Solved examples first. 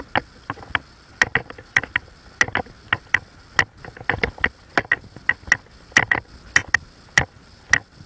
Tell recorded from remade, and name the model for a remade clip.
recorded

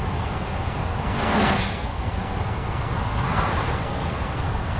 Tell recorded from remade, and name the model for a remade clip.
remade, codec, SNAC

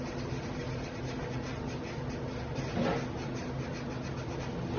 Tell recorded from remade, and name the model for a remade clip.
recorded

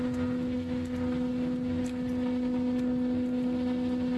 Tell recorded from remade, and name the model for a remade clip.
recorded